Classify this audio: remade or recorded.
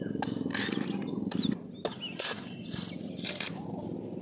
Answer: recorded